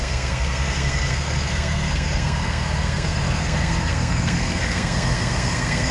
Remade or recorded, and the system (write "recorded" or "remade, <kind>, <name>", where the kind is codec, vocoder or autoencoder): remade, codec, SNAC